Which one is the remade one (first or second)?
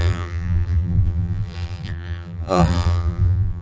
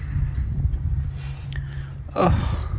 first